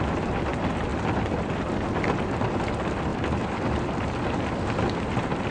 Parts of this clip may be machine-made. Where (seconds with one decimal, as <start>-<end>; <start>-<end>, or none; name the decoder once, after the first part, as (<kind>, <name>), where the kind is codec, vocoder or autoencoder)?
none

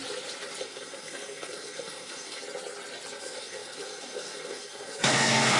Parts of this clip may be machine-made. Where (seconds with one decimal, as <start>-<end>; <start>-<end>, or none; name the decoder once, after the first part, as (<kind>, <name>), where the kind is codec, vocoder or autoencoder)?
0.6-2.4 (codec, SNAC); 3.2-5.6

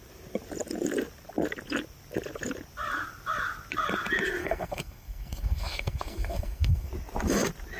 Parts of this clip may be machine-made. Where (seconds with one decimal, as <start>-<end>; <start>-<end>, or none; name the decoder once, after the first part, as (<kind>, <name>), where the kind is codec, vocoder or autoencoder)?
4.4-6.9 (codec, SNAC)

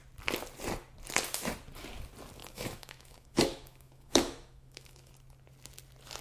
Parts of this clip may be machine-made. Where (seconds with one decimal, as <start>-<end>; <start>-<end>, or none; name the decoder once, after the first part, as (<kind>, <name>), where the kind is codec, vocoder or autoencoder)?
2.4-5.1 (autoencoder, DAC-VAE)

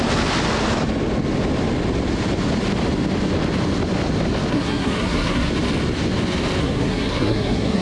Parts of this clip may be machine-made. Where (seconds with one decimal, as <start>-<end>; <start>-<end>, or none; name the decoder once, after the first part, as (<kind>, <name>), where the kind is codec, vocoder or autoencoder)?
4.5-5.5 (codec, SNAC); 6.6-7.8